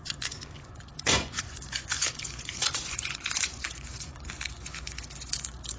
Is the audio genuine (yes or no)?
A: no